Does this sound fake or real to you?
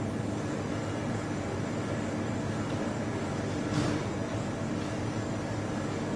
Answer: real